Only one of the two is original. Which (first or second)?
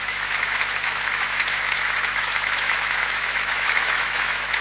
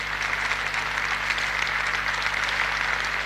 second